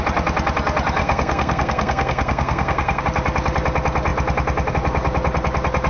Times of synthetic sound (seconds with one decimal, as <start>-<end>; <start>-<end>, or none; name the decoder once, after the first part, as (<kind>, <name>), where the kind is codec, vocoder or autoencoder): 1.0-3.0 (codec, SNAC)

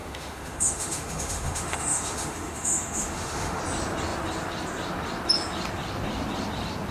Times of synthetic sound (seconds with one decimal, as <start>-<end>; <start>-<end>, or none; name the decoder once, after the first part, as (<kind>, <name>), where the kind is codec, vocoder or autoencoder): 0.0-3.6 (autoencoder, DAC-VAE)

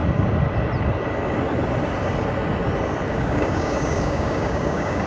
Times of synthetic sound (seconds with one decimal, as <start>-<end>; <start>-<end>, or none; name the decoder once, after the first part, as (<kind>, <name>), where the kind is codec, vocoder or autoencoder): 3.1-5.1 (codec, DAC)

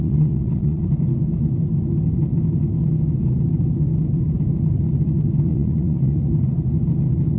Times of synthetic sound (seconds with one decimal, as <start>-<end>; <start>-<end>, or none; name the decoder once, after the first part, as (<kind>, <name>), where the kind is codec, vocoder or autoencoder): 0.0-0.9 (vocoder, Vocos); 5.5-6.2

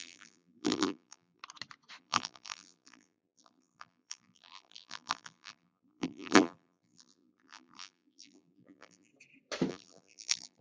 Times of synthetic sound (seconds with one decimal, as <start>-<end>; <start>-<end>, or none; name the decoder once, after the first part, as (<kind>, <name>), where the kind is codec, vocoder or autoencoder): 0.0-1.4 (vocoder, BigVGAN v2); 2.0-9.1; 9.7-10.6

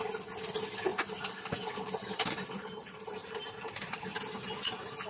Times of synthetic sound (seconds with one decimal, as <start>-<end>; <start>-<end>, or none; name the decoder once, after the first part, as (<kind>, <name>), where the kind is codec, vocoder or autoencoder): 0.9-4.0 (vocoder, BigVGAN v2)